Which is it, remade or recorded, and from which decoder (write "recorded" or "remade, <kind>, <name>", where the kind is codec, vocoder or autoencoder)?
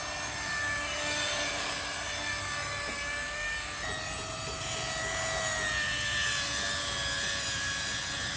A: recorded